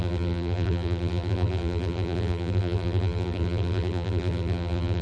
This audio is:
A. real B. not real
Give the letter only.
B